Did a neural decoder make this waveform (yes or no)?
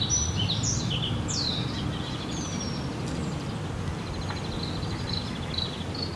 no